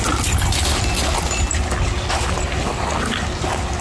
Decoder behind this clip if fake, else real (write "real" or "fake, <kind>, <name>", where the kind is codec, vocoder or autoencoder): real